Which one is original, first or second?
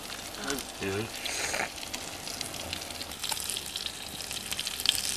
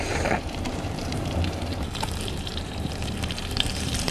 first